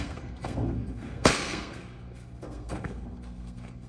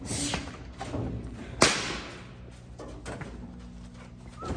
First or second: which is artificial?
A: first